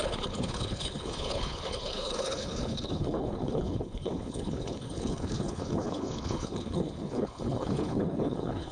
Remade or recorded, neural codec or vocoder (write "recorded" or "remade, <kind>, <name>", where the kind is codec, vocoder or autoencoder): remade, codec, HILCodec